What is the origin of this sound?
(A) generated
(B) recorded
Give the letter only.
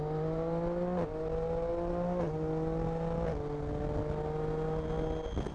B